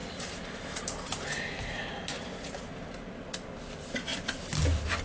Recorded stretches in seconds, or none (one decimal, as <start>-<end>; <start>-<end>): 0.0-5.0